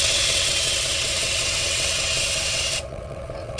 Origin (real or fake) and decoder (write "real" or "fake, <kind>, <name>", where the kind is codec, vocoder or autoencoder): fake, vocoder, WaveNeXt